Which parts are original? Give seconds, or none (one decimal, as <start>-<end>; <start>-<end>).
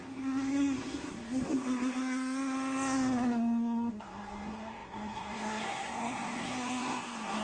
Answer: none